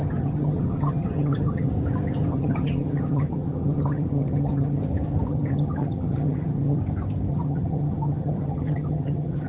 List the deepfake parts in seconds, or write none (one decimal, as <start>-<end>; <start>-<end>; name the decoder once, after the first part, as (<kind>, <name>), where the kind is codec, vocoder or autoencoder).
0.0-1.7 (vocoder, HiFi-GAN); 2.3-4.8; 5.3-6.8; 7.3-9.5